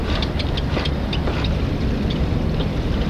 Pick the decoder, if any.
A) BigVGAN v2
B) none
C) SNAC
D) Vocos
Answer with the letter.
A